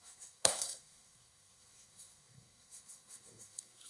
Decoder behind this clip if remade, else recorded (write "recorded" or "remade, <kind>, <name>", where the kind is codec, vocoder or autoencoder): remade, codec, SNAC